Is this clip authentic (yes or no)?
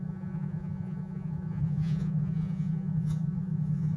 no